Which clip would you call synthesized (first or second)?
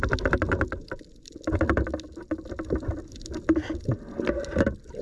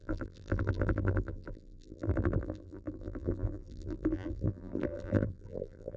second